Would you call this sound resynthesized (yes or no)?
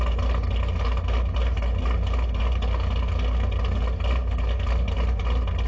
no